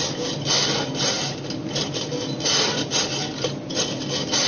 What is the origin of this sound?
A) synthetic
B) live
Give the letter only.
B